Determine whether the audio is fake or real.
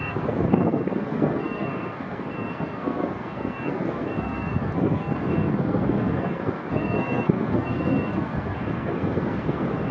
fake